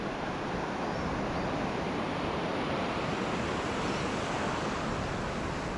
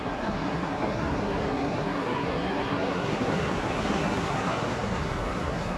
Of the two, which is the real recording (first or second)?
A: first